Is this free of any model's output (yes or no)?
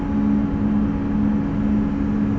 yes